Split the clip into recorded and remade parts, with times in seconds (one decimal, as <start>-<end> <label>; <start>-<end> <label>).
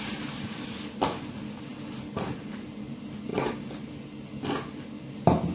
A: 0.0-5.5 recorded